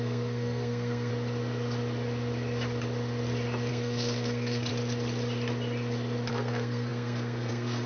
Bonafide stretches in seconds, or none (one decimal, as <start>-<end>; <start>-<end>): 1.1-3.7; 4.7-6.3